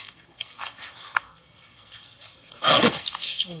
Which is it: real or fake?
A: fake